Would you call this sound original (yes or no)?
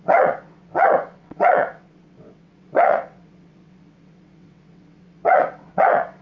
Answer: no